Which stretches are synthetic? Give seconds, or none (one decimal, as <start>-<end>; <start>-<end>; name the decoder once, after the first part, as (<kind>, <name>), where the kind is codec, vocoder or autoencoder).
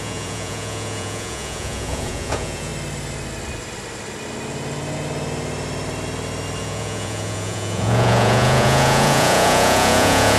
0.0-2.7 (vocoder, Vocos); 6.6-10.4